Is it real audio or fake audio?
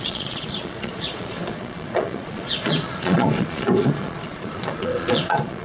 fake